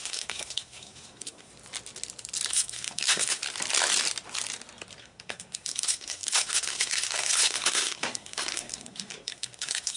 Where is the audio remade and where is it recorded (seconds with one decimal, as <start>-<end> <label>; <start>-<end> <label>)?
0.0-1.5 remade; 1.5-2.5 recorded; 2.5-3.4 remade; 3.4-5.0 recorded; 5.0-10.0 remade